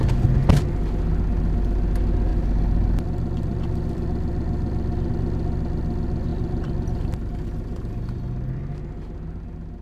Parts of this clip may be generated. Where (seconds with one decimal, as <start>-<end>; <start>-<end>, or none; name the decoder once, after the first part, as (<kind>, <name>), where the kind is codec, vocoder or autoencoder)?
2.3-5.1 (vocoder, BigVGAN v2); 6.3-8.6